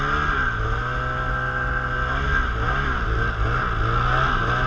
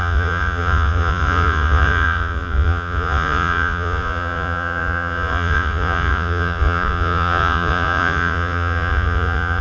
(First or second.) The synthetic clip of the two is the second